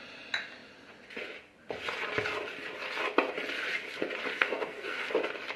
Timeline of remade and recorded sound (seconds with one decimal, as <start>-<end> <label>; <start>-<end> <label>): 0.0-4.3 recorded; 4.3-5.1 remade; 5.1-5.6 recorded